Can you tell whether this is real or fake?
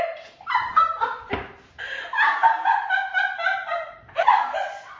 fake